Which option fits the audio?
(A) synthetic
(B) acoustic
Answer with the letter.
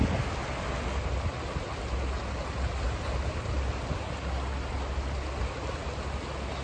B